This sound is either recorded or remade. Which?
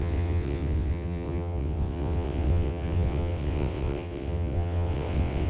remade